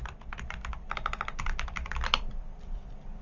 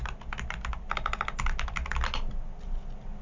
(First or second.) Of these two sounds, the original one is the second